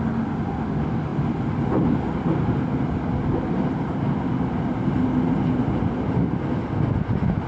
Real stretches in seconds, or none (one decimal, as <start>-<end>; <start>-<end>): 1.1-5.6